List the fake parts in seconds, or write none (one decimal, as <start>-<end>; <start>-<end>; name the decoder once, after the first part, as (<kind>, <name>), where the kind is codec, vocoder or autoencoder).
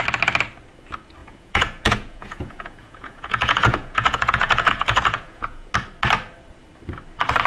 1.2-5.7 (vocoder, Vocos)